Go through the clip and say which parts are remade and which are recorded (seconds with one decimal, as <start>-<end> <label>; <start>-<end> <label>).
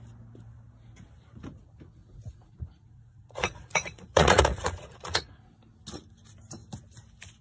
0.0-2.0 recorded; 2.0-5.5 remade; 5.5-7.4 recorded